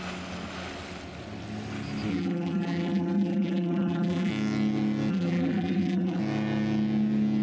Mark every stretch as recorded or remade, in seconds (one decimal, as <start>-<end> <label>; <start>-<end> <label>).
0.0-2.1 recorded; 2.1-4.3 remade; 4.3-5.1 recorded; 5.1-6.2 remade; 6.2-7.4 recorded